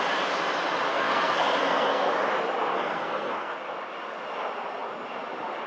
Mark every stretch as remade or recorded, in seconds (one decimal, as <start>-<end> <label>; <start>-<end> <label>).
0.0-0.9 recorded; 0.9-2.1 remade; 2.1-2.7 recorded; 2.7-3.5 remade; 3.5-5.7 recorded

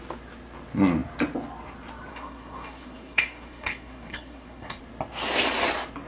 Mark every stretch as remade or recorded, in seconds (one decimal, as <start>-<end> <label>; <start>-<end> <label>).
0.0-2.1 recorded; 2.1-4.8 remade; 4.8-6.1 recorded

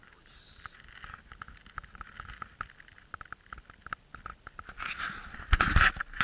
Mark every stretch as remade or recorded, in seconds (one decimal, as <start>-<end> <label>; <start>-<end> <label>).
0.0-6.2 recorded

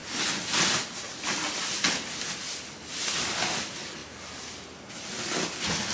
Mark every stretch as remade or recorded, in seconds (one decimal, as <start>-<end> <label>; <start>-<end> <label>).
0.0-5.9 recorded